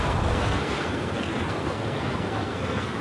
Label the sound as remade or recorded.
remade